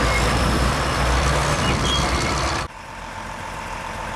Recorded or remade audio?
remade